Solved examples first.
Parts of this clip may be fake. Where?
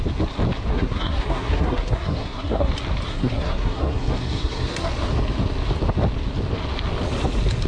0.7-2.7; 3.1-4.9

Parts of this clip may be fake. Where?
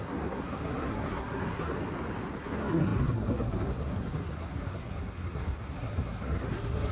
0.0-1.8; 2.4-6.9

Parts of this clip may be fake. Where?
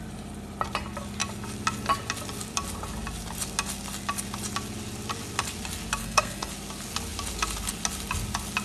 6.0-6.5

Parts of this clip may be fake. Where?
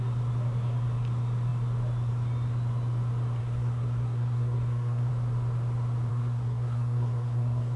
3.4-5.1; 6.1-7.8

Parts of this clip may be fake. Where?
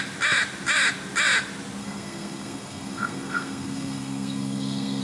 1.8-5.0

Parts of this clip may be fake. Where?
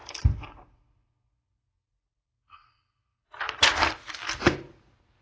none